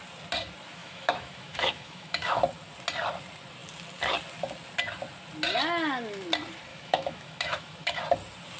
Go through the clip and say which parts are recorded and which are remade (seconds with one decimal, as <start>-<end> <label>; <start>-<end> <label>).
0.0-0.8 recorded; 0.8-2.4 remade; 2.4-6.7 recorded; 6.7-8.0 remade; 8.0-8.6 recorded